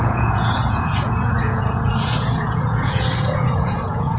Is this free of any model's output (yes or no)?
no